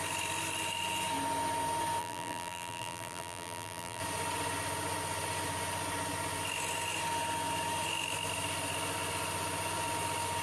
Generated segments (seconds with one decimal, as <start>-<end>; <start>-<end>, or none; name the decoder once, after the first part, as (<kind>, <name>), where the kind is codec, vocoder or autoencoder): 2.0-4.0 (vocoder, BigVGAN v2)